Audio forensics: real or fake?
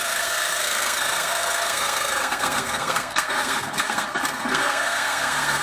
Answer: fake